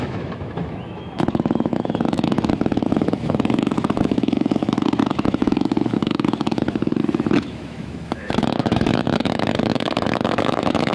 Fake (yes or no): yes